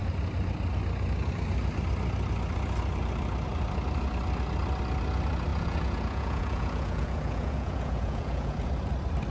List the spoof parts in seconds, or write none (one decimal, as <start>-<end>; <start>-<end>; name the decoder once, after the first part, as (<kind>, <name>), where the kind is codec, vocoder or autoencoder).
5.5-8.7 (vocoder, Vocos)